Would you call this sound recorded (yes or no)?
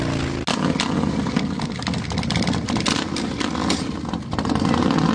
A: yes